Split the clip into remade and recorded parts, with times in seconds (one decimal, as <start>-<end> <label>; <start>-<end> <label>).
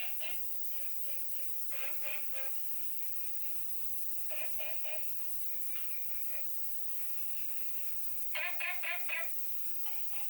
0.0-10.3 recorded